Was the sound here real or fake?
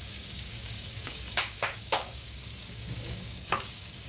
fake